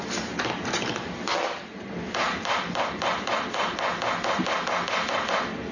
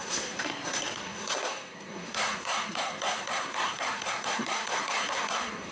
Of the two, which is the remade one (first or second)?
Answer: second